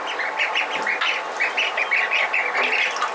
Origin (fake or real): real